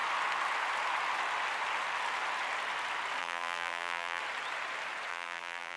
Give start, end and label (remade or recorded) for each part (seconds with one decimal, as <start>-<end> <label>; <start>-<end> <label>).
0.0-3.2 recorded; 3.2-4.2 remade; 4.2-5.1 recorded; 5.1-5.8 remade

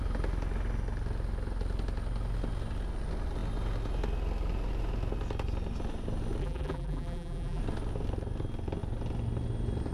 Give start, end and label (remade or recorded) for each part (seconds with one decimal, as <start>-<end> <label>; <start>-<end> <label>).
0.0-6.4 recorded; 6.4-7.6 remade; 7.6-9.9 recorded